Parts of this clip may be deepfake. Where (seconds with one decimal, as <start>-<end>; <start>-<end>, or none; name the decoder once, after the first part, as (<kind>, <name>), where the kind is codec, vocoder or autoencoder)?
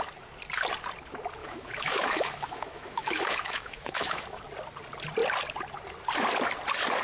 1.4-4.4 (autoencoder, DAC-VAE)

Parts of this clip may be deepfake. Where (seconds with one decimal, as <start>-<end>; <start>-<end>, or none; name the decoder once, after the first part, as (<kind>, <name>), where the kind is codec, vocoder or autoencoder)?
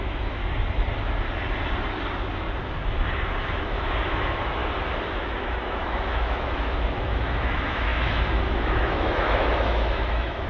0.0-0.4 (autoencoder, DAC-VAE); 3.4-4.6; 5.1-10.5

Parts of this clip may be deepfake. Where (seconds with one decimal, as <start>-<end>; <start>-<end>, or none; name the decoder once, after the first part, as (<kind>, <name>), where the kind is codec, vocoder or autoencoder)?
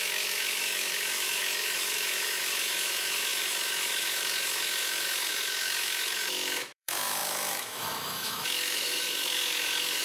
0.0-10.0 (autoencoder, DAC-VAE)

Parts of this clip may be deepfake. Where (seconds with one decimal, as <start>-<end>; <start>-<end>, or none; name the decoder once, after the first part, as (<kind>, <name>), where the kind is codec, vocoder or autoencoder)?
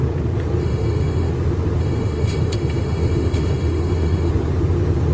0.6-1.3 (autoencoder, DAC-VAE); 1.8-4.3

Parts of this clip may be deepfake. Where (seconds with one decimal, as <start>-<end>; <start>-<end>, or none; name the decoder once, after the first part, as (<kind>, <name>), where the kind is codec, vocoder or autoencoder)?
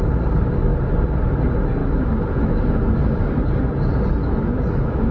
1.8-3.4 (autoencoder, DAC-VAE); 4.2-5.1